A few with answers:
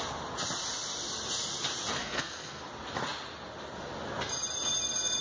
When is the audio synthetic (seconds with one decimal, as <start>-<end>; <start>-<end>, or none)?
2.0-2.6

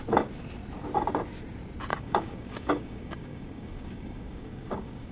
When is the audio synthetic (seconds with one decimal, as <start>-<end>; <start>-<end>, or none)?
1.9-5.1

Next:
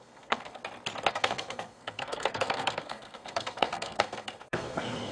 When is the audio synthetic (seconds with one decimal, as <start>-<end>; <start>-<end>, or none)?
0.0-0.6; 1.1-5.1